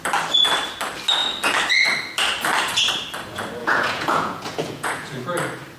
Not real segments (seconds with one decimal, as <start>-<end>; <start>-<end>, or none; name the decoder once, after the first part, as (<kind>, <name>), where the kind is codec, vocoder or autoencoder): 3.6-5.2 (vocoder, Vocos)